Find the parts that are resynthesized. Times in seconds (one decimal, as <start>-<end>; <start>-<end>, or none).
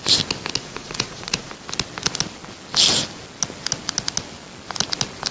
0.6-1.5